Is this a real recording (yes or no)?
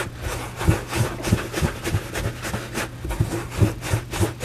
yes